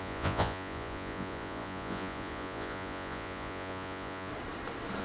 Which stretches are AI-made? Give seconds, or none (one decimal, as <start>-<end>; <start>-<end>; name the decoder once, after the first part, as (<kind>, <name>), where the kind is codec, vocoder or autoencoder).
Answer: 0.0-4.3 (vocoder, Vocos)